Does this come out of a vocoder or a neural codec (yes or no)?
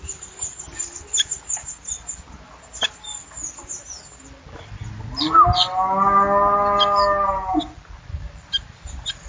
no